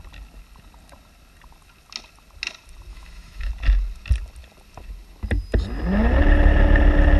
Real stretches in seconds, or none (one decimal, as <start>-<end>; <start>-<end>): 0.0-2.9; 3.5-7.2